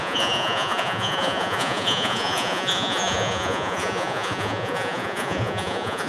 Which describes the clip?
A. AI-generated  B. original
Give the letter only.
A